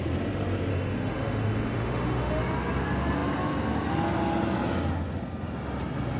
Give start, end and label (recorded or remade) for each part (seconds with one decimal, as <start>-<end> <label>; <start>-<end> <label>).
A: 0.0-0.7 recorded; 0.7-2.4 remade; 2.4-6.2 recorded

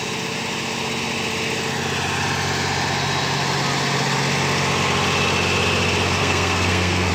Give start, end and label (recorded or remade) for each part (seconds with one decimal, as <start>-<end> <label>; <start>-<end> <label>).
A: 0.0-6.2 recorded; 6.2-7.1 remade

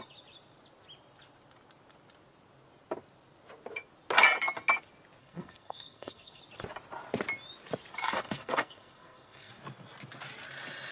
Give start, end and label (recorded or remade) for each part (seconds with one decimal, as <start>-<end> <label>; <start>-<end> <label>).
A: 0.0-5.2 recorded; 5.2-6.4 remade; 6.4-8.0 recorded; 8.0-9.6 remade; 9.6-10.9 recorded

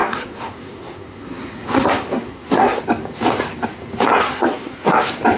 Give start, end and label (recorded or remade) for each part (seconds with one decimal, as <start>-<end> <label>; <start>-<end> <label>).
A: 0.0-2.8 remade; 2.8-4.1 recorded; 4.1-5.0 remade; 5.0-5.4 recorded

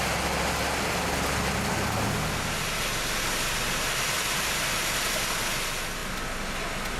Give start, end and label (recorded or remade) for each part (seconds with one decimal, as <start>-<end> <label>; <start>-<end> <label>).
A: 0.0-7.0 recorded

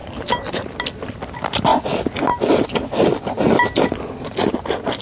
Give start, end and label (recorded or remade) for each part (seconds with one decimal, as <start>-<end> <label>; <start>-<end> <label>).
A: 0.0-5.0 recorded